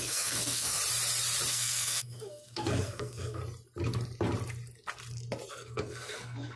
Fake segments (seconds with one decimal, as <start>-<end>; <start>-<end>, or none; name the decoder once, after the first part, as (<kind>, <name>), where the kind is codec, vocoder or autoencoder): 0.0-0.8 (codec, SNAC); 1.5-3.4; 5.5-6.6